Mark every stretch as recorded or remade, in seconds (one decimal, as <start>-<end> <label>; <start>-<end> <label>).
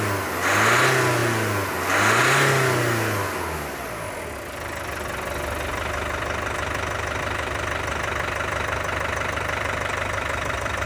0.0-10.9 recorded